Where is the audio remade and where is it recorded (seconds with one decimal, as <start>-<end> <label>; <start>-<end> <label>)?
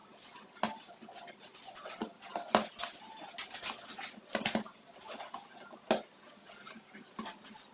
0.0-7.7 recorded